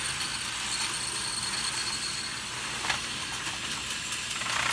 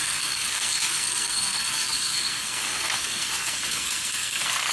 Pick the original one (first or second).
first